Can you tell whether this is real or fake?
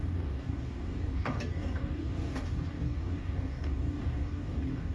fake